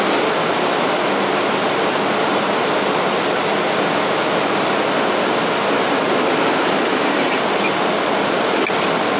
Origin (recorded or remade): recorded